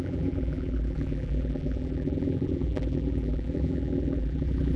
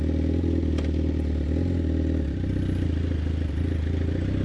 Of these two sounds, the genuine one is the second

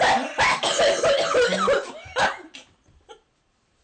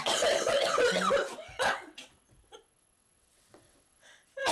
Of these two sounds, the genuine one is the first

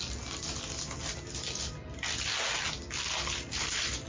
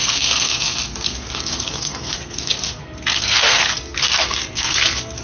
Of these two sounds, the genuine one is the first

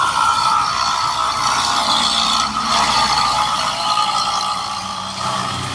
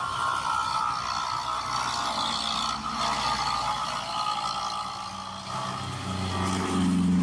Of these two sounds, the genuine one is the second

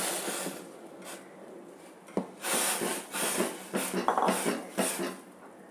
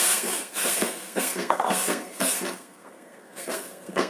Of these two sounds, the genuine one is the first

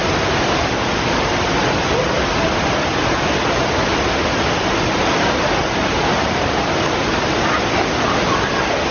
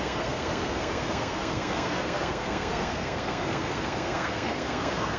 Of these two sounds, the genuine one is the first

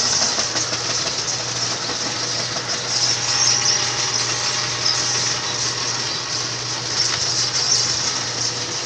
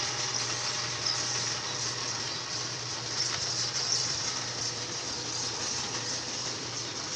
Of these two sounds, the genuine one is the first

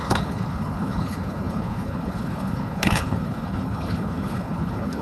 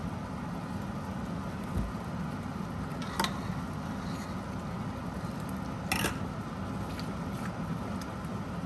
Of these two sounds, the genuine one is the second